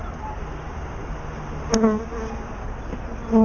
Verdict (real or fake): real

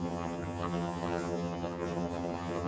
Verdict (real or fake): fake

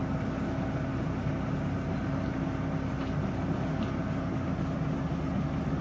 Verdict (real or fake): real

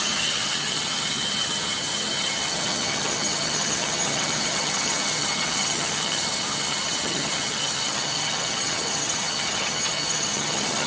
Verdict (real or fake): fake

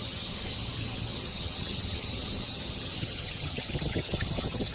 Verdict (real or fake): fake